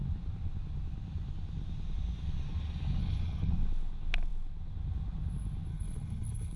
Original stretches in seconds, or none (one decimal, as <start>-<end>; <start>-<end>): 0.0-3.0; 3.5-5.7